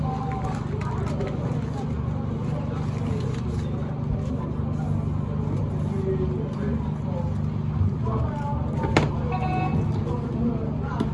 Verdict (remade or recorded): recorded